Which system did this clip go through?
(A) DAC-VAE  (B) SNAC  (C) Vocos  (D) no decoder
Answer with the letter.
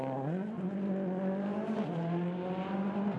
D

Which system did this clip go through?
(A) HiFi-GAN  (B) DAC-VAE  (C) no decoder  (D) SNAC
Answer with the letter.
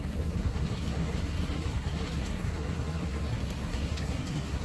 D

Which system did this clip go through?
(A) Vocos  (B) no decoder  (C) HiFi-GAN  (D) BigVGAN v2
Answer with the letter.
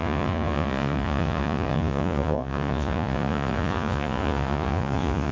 A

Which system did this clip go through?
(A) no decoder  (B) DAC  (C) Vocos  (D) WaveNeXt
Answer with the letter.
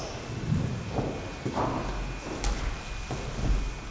A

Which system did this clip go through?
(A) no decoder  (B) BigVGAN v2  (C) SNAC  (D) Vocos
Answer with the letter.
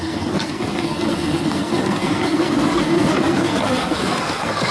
C